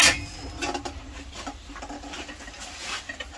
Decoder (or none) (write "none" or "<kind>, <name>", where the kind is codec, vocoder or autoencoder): none